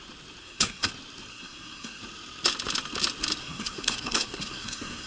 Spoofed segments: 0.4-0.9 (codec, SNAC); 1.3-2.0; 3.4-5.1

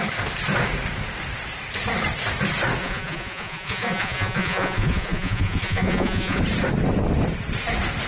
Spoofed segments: 2.8-6.4 (vocoder, Vocos)

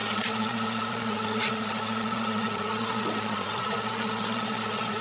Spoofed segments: 0.0-5.0 (vocoder, Vocos)

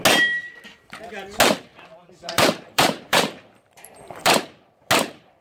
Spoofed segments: 1.7-4.9 (vocoder, BigVGAN v2)

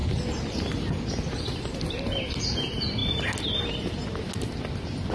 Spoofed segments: none

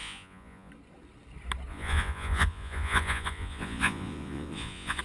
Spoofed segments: 0.0-0.7 (vocoder, Vocos); 1.7-5.0